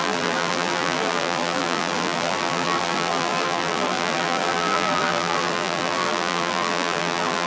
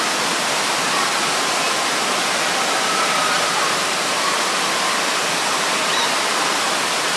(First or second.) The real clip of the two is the second